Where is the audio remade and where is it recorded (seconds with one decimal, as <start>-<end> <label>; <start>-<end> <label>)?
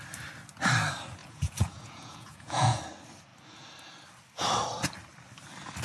0.0-1.2 recorded; 1.2-2.8 remade; 2.8-5.8 recorded